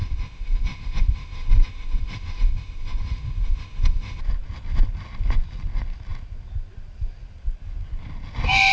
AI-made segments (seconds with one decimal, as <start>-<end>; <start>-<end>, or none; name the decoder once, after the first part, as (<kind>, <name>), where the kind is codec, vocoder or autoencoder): 0.0-4.2 (autoencoder, DAC-VAE)